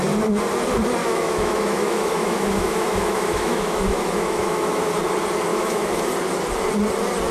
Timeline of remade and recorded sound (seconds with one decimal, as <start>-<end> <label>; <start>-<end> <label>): 0.0-1.0 recorded; 1.0-4.9 remade; 4.9-5.5 recorded; 5.5-6.0 remade; 6.0-7.3 recorded